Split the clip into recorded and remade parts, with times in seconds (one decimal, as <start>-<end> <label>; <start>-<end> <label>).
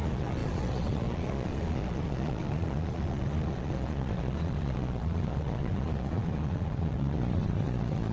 0.0-8.1 remade